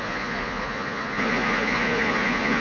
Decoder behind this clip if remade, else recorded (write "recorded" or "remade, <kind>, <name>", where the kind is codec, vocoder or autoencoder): remade, vocoder, Vocos